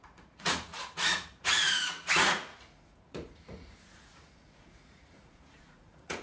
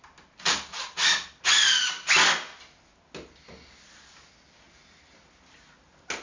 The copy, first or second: first